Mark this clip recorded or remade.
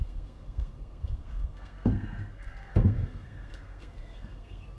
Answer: remade